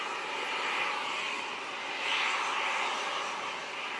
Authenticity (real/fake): real